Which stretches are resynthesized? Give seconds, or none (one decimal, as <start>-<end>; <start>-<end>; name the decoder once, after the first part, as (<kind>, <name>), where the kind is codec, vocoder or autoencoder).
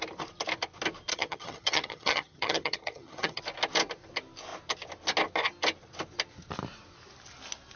1.1-3.4 (vocoder, HiFi-GAN)